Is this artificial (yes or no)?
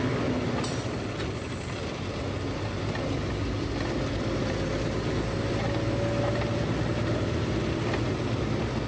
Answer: no